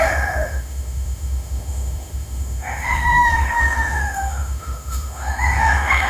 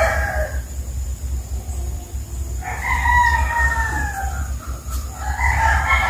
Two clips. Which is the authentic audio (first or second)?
second